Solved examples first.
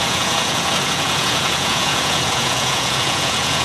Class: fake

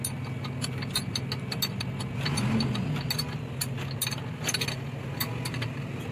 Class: real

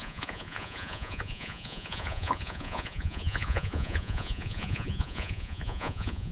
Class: fake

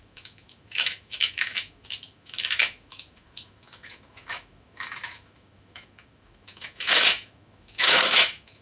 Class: fake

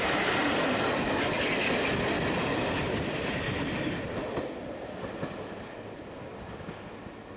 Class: real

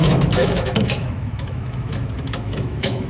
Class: fake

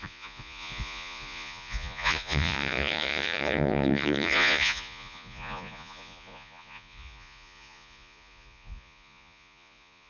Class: fake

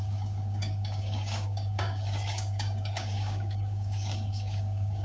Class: fake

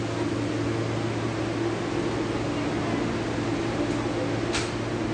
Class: real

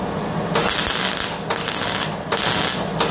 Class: real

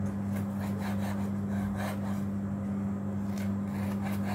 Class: real